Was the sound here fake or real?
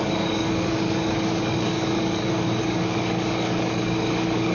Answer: fake